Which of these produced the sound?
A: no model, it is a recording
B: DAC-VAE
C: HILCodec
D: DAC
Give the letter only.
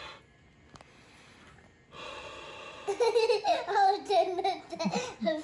A